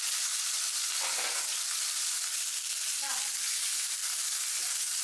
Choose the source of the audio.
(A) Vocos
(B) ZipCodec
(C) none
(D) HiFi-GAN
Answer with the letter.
C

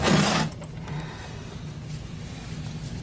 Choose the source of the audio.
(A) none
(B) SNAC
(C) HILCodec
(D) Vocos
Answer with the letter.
A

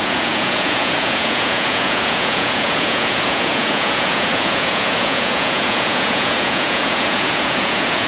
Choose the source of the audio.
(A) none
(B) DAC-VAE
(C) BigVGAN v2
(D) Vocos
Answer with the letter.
D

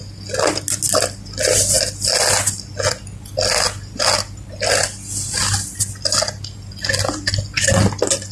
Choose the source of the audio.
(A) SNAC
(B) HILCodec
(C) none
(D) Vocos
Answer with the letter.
C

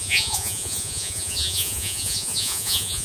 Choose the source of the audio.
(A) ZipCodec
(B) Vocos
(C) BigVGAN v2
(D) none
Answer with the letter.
B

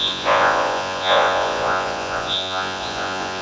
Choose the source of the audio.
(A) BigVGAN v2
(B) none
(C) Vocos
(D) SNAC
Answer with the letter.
C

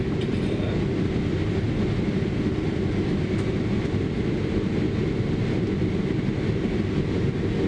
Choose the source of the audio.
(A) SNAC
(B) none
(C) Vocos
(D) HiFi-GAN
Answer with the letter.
B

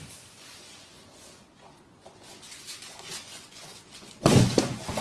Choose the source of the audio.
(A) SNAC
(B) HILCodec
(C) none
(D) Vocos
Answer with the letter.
D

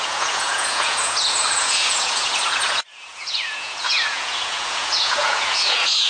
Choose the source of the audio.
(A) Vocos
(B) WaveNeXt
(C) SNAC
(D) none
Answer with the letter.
A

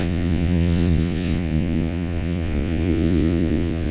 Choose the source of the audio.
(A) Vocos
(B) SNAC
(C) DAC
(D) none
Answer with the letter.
A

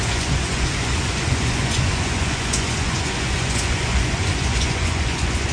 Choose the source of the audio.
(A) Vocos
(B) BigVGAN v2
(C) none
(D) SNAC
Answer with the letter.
A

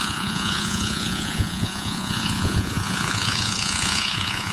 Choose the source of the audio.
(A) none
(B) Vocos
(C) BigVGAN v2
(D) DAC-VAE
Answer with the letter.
B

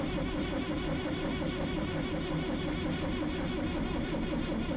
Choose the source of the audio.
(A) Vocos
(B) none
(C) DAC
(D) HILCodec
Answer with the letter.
B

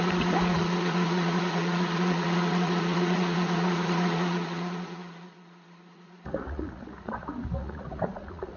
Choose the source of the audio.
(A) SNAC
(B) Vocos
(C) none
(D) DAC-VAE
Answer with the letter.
B